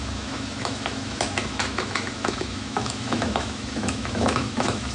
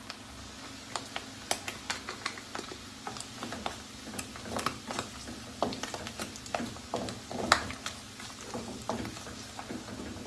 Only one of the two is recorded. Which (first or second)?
second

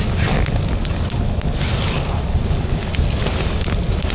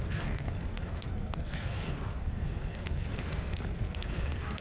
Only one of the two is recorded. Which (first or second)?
first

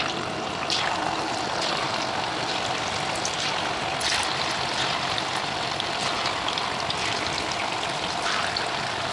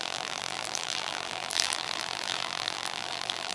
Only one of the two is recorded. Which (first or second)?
first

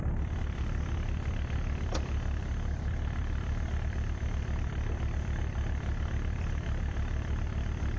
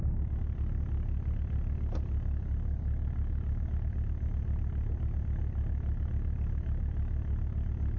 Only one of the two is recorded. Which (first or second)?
second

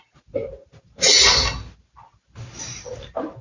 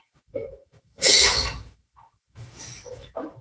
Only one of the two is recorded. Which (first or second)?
first